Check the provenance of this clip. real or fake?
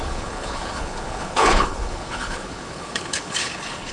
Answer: fake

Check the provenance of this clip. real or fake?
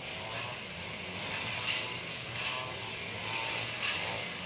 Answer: real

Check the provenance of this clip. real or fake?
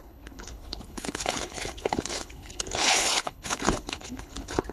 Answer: fake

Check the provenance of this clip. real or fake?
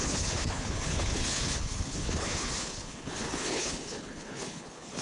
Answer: fake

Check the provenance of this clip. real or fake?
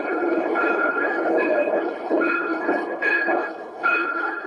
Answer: fake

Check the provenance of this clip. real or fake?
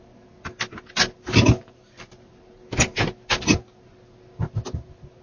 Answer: real